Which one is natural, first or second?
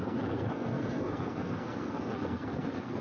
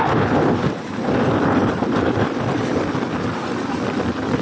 second